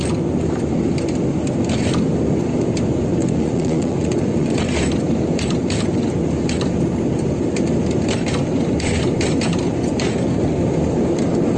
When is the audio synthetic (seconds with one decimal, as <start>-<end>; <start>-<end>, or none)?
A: 3.2-4.6